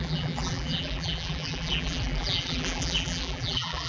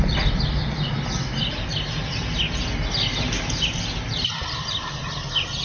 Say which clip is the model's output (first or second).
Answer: first